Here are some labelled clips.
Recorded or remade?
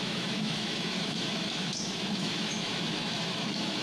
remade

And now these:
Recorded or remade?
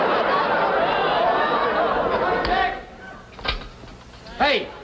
recorded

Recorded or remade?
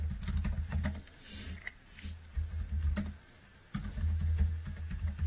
recorded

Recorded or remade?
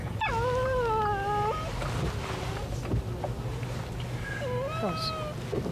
recorded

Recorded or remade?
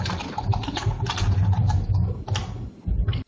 recorded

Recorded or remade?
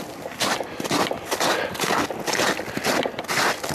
recorded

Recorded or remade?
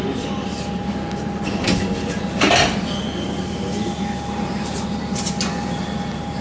recorded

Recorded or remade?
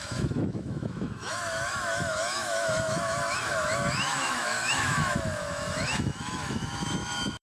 remade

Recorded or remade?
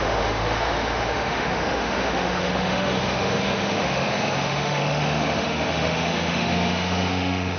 remade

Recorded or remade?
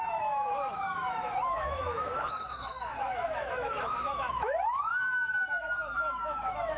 remade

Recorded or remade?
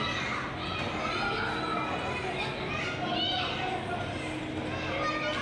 recorded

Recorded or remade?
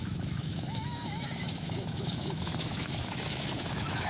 remade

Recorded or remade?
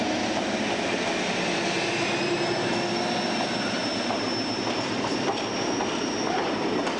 recorded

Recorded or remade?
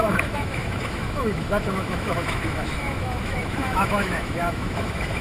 remade